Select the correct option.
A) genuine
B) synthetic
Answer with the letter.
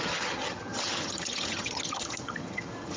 B